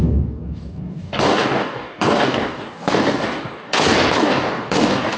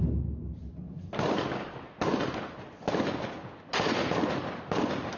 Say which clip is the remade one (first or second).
first